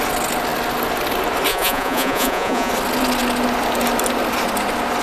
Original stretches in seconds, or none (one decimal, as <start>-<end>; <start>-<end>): 0.0-1.5; 2.7-5.0